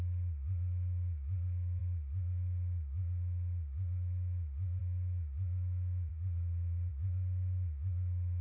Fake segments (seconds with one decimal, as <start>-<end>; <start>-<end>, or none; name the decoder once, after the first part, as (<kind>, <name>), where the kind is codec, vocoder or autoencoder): 6.1-6.9 (vocoder, Vocos)